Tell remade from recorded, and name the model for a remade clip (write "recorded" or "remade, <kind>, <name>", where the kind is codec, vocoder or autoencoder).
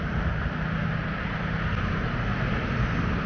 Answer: recorded